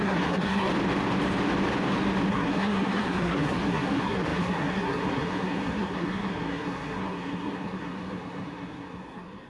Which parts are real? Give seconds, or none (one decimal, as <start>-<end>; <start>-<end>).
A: 0.7-2.3